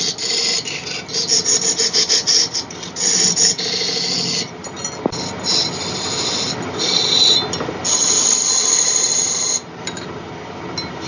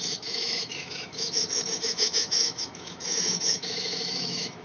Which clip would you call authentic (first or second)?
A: first